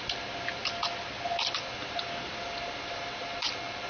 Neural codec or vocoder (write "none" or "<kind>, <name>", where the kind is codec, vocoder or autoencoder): none